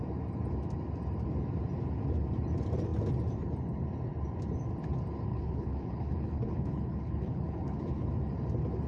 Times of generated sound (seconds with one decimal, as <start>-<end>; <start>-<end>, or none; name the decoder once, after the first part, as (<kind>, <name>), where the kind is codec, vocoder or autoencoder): 5.3-8.1 (codec, HILCodec)

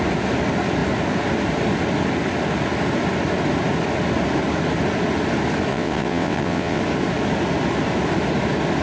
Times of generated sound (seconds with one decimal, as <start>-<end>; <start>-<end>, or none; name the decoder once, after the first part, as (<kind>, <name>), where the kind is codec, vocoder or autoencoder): 5.7-6.8 (vocoder, WaveNeXt)